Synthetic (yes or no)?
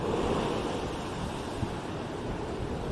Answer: no